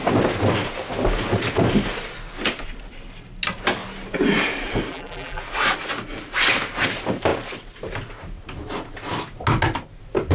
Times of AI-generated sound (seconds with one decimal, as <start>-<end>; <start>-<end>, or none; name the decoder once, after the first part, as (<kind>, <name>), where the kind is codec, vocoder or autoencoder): 4.9-5.4 (vocoder, BigVGAN v2)